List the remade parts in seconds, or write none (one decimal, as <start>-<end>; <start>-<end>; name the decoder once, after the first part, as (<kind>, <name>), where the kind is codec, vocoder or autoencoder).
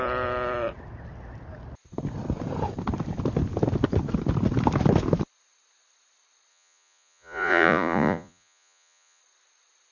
6.5-9.2 (vocoder, Vocos)